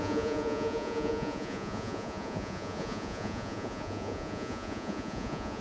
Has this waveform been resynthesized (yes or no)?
yes